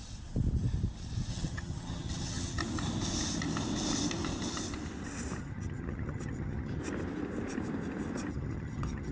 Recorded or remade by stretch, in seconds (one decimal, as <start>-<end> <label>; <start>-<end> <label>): 0.0-1.3 recorded; 1.3-2.6 remade; 2.6-5.4 recorded; 5.4-6.8 remade; 6.8-8.3 recorded; 8.3-9.1 remade